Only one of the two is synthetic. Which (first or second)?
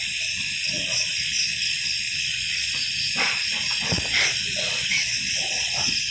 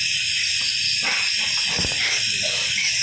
first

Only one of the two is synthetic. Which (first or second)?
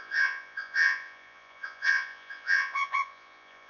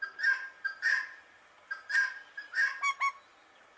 first